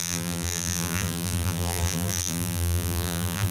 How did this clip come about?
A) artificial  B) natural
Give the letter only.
A